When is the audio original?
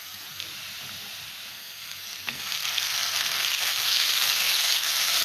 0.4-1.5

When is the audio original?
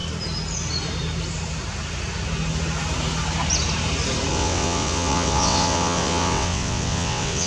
0.0-4.3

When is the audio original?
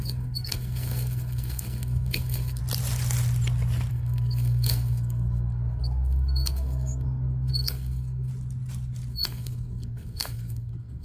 2.6-3.9; 8.3-9.1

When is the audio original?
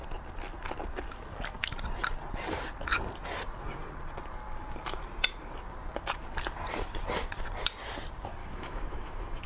0.0-8.4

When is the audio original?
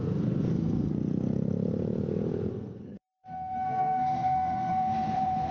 0.9-2.5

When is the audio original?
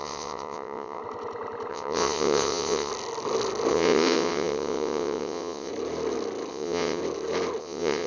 1.0-1.7; 2.9-3.7; 5.7-6.5; 7.0-7.6